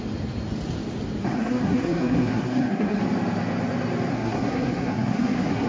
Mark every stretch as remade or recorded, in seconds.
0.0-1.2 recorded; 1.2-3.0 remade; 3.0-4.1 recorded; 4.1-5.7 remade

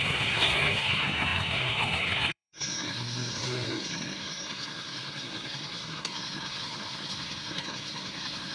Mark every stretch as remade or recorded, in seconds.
0.0-8.5 remade